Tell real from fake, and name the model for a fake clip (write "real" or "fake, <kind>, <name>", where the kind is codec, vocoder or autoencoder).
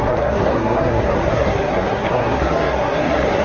fake, codec, SNAC